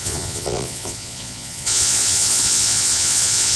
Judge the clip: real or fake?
fake